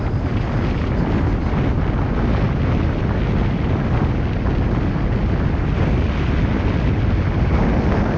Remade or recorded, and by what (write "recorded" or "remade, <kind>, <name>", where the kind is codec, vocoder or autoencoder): recorded